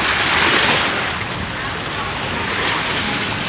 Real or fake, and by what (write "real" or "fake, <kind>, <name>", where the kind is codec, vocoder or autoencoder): real